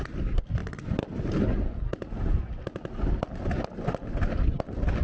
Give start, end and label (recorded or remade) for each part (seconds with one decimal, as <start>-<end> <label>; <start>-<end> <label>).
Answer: 0.0-5.0 recorded